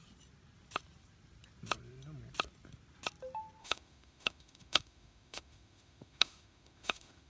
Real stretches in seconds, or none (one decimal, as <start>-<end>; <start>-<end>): 0.0-3.6